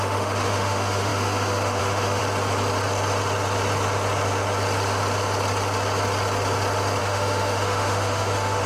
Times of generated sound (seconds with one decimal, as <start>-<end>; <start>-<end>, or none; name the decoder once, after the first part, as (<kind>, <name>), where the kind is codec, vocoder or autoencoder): 0.0-2.2 (autoencoder, DAC-VAE); 7.0-8.7